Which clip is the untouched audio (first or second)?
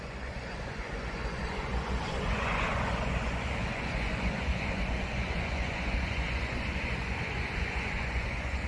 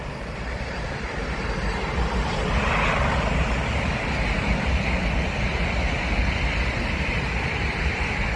second